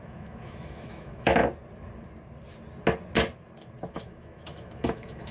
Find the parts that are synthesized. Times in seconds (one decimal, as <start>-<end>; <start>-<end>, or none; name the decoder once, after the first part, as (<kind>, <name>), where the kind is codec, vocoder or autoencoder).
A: 0.0-1.4 (autoencoder, DAC-VAE); 3.9-5.3